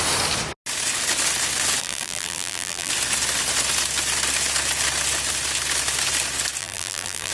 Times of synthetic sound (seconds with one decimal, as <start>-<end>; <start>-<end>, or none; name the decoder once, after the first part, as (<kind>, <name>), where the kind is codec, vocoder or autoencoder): 1.8-2.9 (vocoder, BigVGAN v2); 6.6-7.3